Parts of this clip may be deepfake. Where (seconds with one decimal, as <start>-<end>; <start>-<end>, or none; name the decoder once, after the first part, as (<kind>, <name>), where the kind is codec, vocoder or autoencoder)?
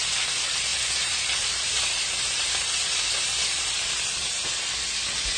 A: 0.7-3.7 (vocoder, BigVGAN v2); 4.2-4.7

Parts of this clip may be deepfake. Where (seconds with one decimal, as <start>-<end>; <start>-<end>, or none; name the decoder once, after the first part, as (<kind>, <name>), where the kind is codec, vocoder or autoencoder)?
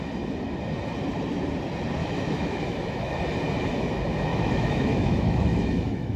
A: 2.0-3.2 (autoencoder, DAC-VAE); 4.3-6.2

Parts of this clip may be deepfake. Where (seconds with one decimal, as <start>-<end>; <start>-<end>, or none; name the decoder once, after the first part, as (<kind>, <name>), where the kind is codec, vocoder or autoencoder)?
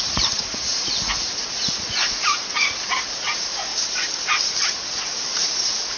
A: 0.0-3.7 (vocoder, Vocos); 4.7-6.0